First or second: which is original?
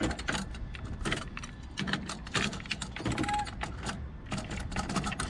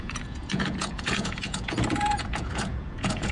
first